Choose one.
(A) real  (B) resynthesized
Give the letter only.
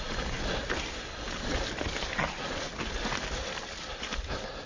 A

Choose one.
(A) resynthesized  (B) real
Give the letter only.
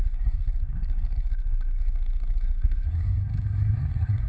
A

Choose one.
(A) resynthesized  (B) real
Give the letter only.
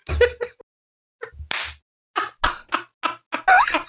B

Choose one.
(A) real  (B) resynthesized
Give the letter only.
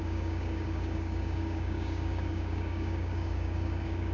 B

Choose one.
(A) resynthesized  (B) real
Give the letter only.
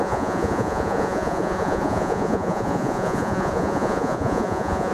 A